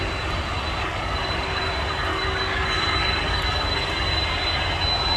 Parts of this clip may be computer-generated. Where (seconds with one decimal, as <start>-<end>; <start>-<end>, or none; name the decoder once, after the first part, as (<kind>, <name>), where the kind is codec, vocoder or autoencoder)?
0.8-1.6 (codec, DAC); 2.1-3.9

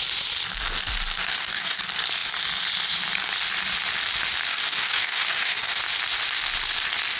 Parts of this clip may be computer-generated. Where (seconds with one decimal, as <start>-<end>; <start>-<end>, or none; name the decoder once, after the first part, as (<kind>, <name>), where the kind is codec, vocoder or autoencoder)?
1.2-1.8 (codec, DAC); 4.5-5.8

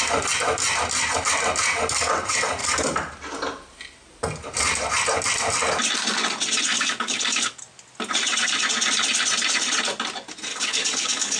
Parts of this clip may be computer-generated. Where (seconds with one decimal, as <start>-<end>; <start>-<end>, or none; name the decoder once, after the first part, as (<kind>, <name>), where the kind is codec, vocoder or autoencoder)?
6.7-7.6 (codec, DAC); 10.5-11.4

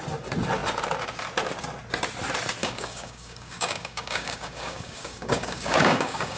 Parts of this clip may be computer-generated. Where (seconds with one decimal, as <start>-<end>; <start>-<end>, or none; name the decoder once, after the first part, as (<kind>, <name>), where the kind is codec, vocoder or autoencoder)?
2.6-6.4 (codec, DAC)

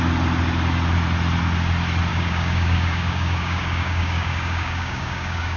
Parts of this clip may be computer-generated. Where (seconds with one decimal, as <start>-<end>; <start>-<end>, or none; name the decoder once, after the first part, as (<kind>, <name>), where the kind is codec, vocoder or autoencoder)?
2.1-5.6 (codec, DAC)